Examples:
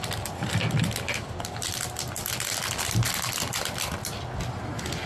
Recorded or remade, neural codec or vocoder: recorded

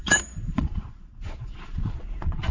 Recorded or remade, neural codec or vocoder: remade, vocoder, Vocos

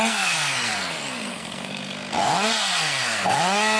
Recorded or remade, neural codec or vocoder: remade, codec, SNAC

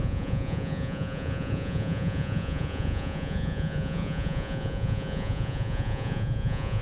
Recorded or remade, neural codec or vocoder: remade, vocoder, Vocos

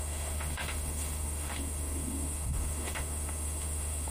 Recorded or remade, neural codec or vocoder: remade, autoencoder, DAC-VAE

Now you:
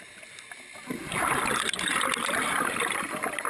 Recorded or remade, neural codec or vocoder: recorded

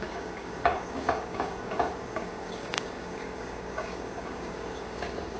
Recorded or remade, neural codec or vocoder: remade, codec, DAC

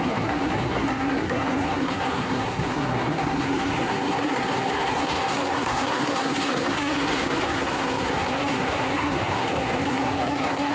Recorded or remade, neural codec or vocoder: remade, codec, SNAC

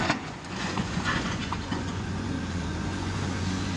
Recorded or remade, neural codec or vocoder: remade, vocoder, Vocos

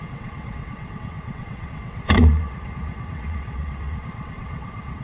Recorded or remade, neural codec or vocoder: remade, vocoder, WaveNeXt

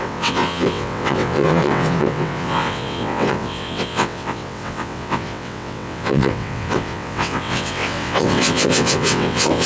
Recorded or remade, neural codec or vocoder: remade, vocoder, WaveNeXt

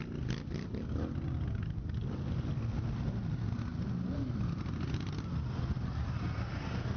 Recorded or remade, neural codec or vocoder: recorded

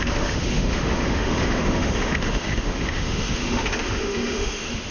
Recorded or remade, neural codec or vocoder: remade, autoencoder, DAC-VAE